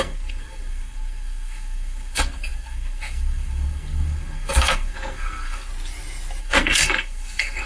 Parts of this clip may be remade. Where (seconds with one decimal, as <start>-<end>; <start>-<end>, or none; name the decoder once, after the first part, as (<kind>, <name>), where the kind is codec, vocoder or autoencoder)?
0.0-5.7 (codec, SNAC); 6.4-7.7